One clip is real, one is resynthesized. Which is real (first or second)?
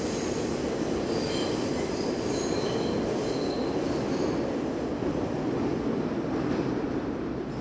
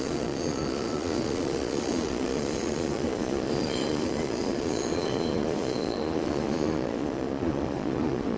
first